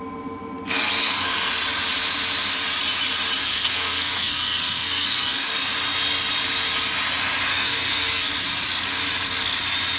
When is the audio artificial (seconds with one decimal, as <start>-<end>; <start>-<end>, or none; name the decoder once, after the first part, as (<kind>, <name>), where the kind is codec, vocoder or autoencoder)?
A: 1.0-1.5 (codec, SNAC); 3.4-5.5; 7.5-8.3